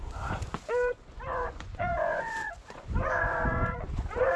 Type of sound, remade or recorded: remade